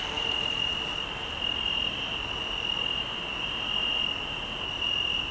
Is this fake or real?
real